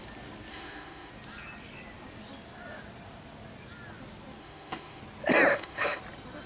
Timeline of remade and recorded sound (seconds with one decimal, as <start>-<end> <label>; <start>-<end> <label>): 0.0-0.5 recorded; 0.5-1.1 remade; 1.1-4.4 recorded; 4.4-5.0 remade; 5.0-5.5 recorded; 5.5-6.0 remade; 6.0-6.5 recorded